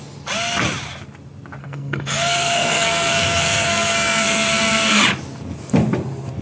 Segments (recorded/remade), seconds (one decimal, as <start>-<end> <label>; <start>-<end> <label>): 0.0-1.6 recorded; 1.6-5.0 remade; 5.0-6.4 recorded